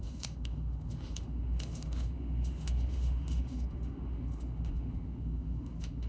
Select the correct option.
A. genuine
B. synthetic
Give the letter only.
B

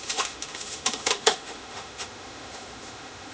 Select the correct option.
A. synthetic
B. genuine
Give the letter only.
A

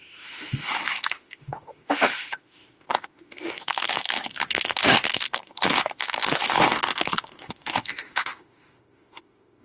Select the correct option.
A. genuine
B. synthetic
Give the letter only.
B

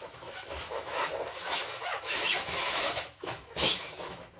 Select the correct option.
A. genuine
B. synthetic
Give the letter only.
B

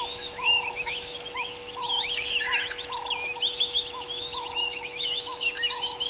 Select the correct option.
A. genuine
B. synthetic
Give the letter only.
B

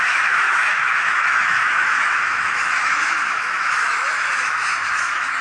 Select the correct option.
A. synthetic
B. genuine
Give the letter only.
A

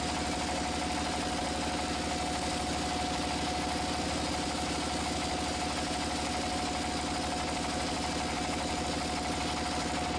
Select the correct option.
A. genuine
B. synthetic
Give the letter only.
A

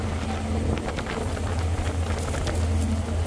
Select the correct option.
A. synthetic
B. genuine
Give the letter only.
B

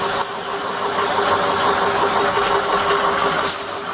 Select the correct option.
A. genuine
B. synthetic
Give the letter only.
A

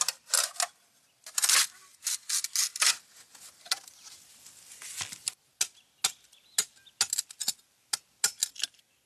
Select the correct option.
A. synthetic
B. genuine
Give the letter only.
B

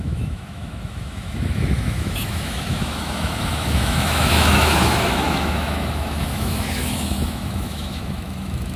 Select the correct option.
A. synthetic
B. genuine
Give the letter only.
A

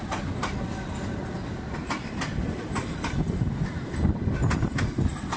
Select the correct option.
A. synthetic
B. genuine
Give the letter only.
B